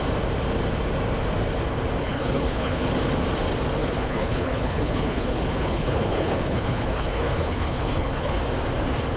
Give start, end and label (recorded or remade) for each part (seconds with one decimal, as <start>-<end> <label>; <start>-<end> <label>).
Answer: 0.0-2.0 recorded; 2.0-2.8 remade; 2.8-3.8 recorded; 3.8-8.4 remade; 8.4-9.2 recorded